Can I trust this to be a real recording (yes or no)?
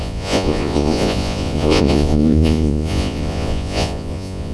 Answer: no